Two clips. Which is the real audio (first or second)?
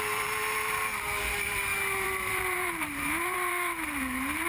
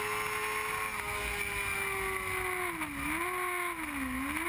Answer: second